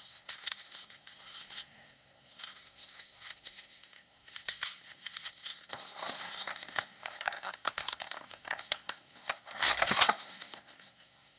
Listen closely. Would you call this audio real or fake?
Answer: fake